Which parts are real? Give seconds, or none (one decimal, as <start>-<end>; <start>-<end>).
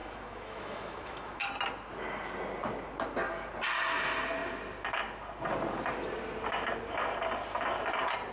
1.5-8.3